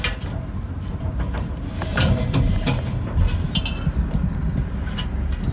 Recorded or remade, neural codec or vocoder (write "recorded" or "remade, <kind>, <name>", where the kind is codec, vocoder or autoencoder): recorded